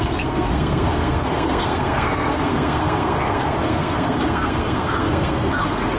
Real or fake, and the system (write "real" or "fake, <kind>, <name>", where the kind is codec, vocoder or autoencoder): fake, codec, SNAC